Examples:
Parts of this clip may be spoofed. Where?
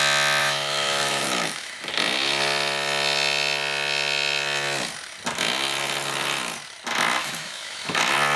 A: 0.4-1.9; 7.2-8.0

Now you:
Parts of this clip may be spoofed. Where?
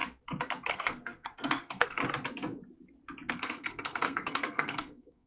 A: 0.7-2.0; 3.3-5.3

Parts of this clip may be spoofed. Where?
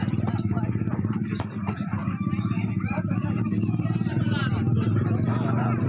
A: 0.0-5.9